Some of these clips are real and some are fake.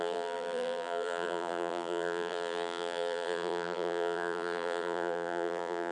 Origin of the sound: fake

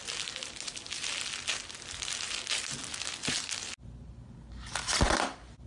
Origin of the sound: real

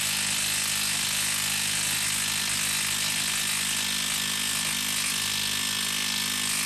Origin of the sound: real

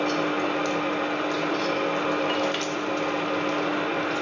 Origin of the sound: real